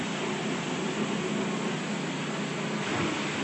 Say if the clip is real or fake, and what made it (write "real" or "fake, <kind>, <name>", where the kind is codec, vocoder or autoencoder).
real